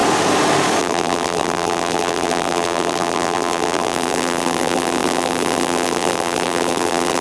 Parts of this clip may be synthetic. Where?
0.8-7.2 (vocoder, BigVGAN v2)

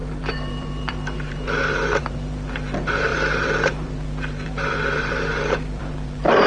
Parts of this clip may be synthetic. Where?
0.0-6.5 (vocoder, BigVGAN v2)